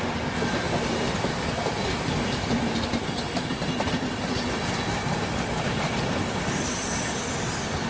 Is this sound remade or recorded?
recorded